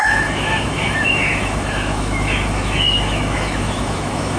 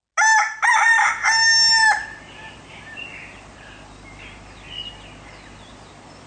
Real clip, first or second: second